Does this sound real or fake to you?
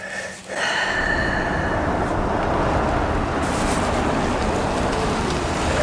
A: real